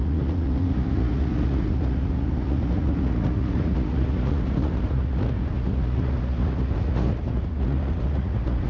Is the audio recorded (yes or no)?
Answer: no